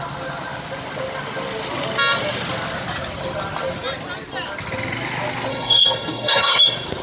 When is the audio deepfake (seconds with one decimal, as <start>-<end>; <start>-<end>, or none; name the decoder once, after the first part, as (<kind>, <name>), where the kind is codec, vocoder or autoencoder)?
5.5-6.6 (codec, HILCodec)

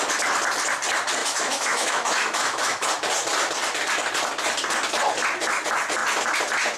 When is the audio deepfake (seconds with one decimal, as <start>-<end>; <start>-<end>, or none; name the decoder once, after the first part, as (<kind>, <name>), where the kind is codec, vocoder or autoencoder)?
1.2-2.9 (autoencoder, DAC-VAE)

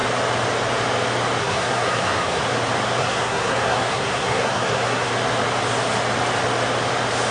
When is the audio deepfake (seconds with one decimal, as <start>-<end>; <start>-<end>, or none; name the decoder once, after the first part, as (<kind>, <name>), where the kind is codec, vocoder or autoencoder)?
1.4-2.4 (codec, SNAC); 3.0-5.1

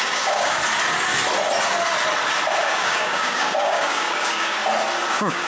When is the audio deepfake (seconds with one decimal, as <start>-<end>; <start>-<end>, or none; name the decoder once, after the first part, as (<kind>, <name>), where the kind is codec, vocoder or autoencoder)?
0.0-0.6 (codec, DAC); 2.6-4.6; 5.1-5.5

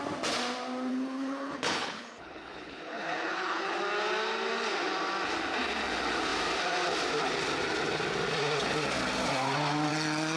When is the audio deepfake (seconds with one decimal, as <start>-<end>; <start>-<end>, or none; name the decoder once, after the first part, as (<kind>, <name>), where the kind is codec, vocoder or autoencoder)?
0.9-3.8 (codec, HILCodec)

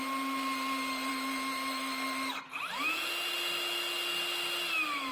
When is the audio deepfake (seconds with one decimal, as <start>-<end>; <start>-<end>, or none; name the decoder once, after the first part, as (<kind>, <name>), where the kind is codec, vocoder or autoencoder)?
1.1-2.4 (autoencoder, DAC-VAE)

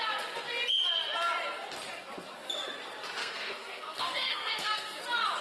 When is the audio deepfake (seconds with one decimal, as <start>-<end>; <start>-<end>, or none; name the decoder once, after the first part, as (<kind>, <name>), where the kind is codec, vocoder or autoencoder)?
3.2-5.0 (codec, SNAC)